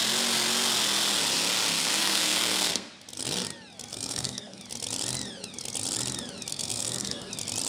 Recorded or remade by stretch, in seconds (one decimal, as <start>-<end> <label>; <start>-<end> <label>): 0.0-1.8 recorded; 1.8-2.9 remade; 2.9-3.9 recorded; 3.9-4.6 remade; 4.6-6.5 recorded; 6.5-7.3 remade; 7.3-7.7 recorded